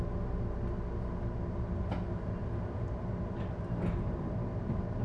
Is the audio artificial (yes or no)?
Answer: no